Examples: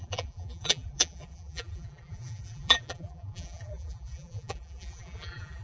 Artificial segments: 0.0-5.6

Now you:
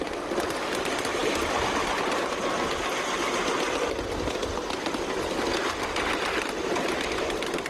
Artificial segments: none

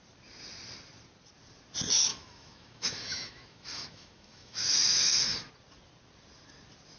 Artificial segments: 2.1-5.5

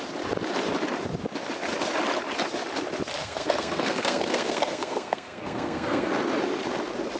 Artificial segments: 3.2-6.1

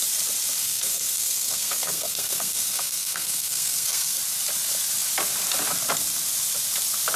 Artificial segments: 0.6-4.2

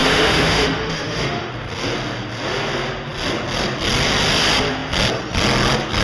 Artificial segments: 0.0-1.5

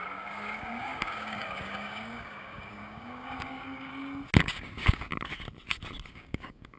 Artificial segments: 0.0-3.9; 4.4-5.1; 6.1-6.8